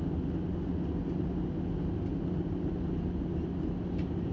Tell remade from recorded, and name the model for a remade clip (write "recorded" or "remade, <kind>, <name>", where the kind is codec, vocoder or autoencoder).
recorded